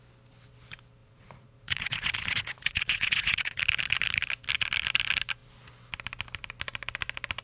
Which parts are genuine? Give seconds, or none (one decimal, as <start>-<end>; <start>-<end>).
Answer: 0.0-1.0; 3.6-7.4